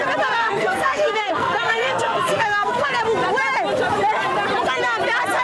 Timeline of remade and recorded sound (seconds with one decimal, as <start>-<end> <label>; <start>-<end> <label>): 0.0-0.4 recorded; 0.4-2.9 remade; 2.9-5.4 recorded